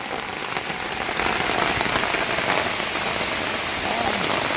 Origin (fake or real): real